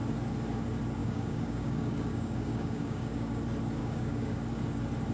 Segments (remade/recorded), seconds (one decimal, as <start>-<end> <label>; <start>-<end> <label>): 0.0-1.0 recorded; 1.0-3.4 remade; 3.4-3.8 recorded; 3.8-4.4 remade; 4.4-5.1 recorded